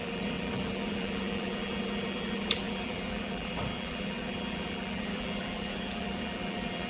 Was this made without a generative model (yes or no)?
no